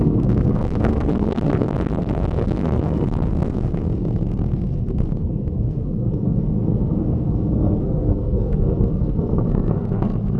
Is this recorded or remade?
remade